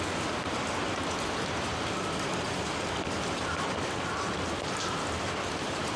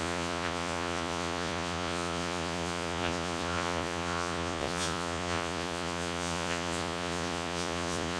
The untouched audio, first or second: first